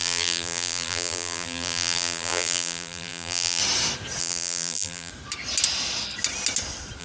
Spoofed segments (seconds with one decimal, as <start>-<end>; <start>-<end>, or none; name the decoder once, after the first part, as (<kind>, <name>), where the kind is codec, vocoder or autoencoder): 0.0-3.6 (vocoder, BigVGAN v2); 4.2-5.1